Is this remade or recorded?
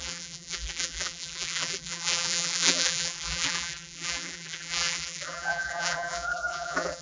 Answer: remade